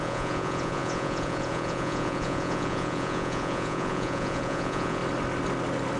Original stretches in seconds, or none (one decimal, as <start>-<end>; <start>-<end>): 5.0-6.0